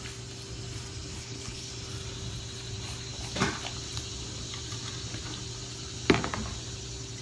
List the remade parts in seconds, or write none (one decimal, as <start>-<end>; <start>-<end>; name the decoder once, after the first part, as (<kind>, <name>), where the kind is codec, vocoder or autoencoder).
1.1-1.7 (codec, HILCodec)